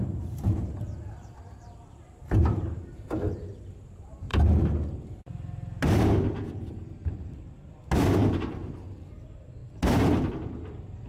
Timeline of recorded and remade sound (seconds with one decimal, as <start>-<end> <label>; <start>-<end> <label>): 0.0-4.3 remade; 4.3-8.4 recorded; 8.4-9.6 remade; 9.6-10.3 recorded; 10.3-11.1 remade

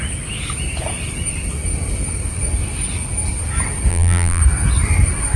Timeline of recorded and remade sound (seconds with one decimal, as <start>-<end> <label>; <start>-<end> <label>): 0.0-3.9 recorded; 3.9-4.4 remade; 4.4-5.4 recorded

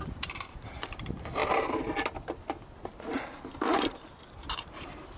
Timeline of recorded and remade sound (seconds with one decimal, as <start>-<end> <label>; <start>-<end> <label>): 0.0-1.4 remade; 1.4-4.3 recorded; 4.3-5.2 remade

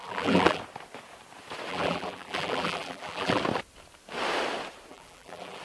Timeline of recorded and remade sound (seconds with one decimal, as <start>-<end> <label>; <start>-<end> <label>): 0.0-0.6 remade; 0.6-1.7 recorded; 1.7-3.4 remade; 3.4-4.9 recorded; 4.9-5.6 remade